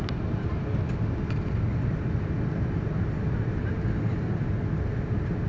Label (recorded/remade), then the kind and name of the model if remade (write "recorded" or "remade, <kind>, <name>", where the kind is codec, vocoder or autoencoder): recorded